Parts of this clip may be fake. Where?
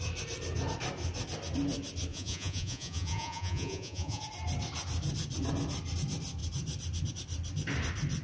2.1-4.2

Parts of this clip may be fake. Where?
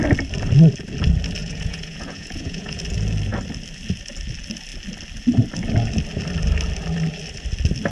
1.4-2.8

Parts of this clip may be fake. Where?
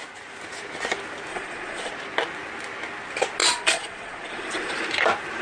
1.3-1.9; 3.4-4.8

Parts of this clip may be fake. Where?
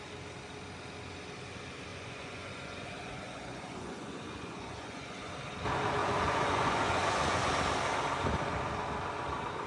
1.9-5.3; 6.0-7.5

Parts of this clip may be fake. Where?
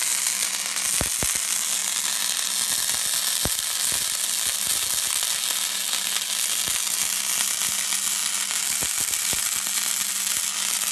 none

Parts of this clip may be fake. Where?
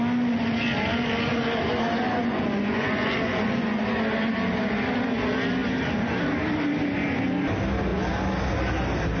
2.2-3.8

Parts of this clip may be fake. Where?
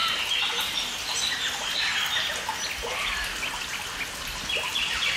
none